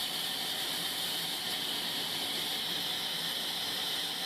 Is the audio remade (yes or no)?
no